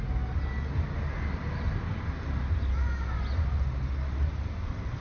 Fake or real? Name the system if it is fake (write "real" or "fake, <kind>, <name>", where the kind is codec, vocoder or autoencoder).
real